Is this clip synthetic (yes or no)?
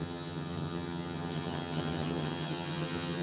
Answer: yes